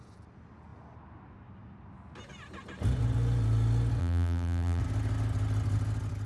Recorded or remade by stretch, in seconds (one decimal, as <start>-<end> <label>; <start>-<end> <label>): 0.0-4.0 recorded; 4.0-4.8 remade; 4.8-6.3 recorded